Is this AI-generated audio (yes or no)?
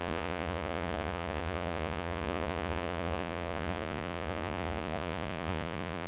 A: yes